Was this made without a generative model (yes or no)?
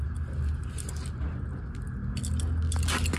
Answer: yes